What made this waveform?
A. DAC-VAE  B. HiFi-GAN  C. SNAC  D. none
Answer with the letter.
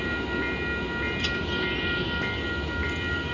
D